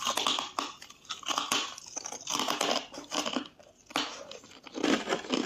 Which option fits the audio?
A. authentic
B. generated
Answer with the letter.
A